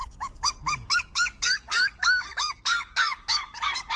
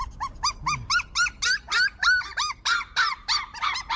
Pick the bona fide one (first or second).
second